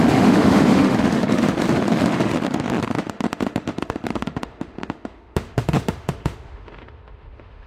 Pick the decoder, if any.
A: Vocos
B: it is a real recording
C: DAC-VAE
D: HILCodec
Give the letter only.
C